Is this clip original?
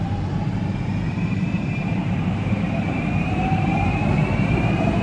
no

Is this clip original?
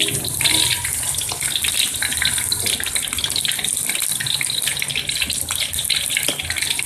yes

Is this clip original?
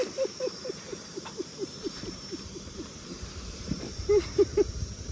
no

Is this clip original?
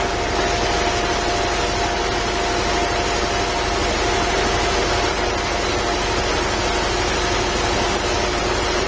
yes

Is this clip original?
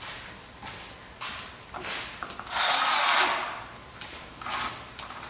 yes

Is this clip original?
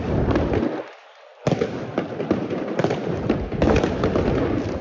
yes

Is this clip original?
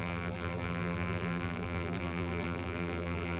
no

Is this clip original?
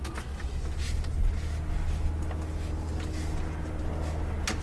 yes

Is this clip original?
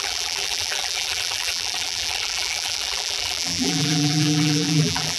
no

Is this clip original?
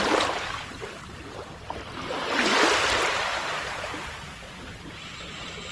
no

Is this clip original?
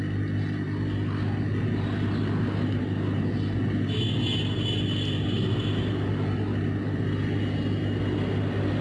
yes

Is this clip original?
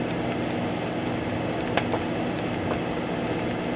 yes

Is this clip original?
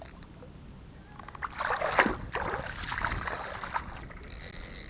yes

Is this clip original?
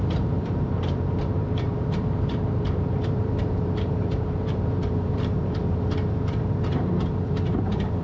no